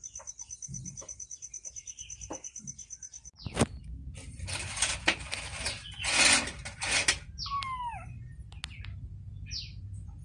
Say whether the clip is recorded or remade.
recorded